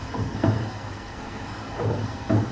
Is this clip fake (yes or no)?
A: yes